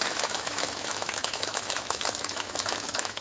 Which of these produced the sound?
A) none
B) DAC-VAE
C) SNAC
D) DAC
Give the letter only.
B